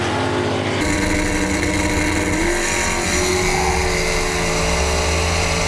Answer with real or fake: real